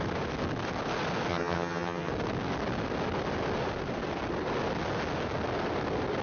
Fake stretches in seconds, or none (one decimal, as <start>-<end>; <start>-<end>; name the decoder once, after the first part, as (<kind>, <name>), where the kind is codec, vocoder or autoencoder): 1.3-2.1 (vocoder, HiFi-GAN)